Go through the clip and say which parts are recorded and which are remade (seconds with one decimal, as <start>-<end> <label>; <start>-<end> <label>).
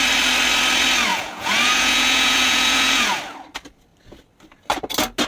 0.0-1.1 recorded; 1.1-3.2 remade; 3.2-5.3 recorded